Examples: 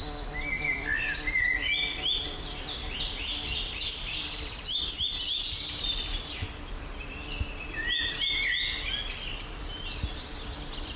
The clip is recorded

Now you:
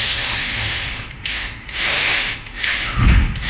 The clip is remade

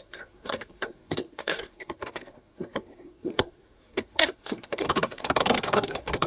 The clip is remade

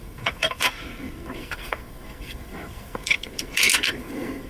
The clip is remade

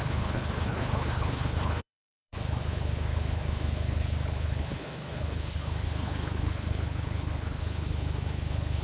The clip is remade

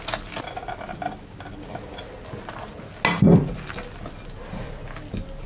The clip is recorded